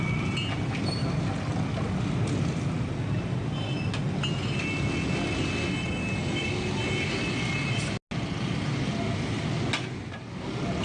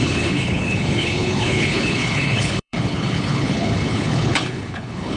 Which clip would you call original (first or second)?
first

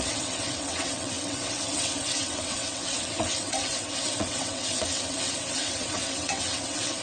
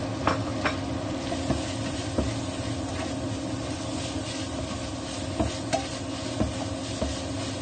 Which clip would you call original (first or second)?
second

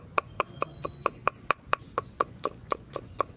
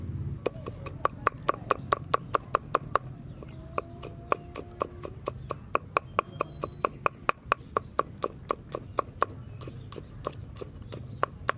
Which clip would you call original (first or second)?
second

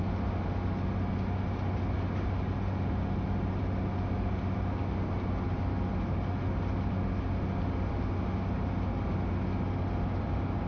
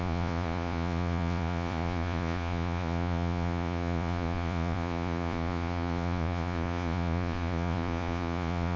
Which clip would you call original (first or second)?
first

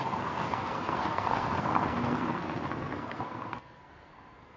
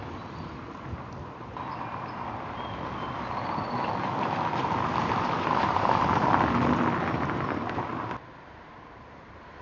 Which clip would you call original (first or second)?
second